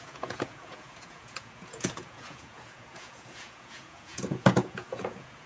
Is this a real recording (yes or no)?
no